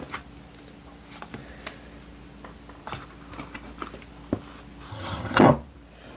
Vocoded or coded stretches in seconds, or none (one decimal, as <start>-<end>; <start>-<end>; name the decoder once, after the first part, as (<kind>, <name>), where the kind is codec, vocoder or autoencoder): 4.9-5.5 (vocoder, HiFi-GAN)